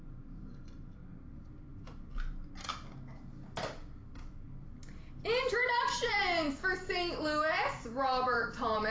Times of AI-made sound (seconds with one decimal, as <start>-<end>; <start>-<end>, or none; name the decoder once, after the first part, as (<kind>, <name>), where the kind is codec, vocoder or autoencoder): 0.0-1.0 (vocoder, BigVGAN v2); 5.5-6.2; 7.1-8.9